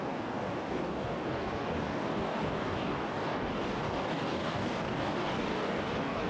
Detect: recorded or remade remade